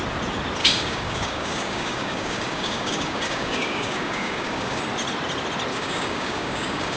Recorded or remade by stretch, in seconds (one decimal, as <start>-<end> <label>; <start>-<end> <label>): 0.0-0.6 recorded; 0.6-4.8 remade; 4.8-5.7 recorded; 5.7-7.0 remade